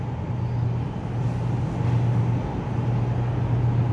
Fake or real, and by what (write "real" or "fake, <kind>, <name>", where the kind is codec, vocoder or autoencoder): real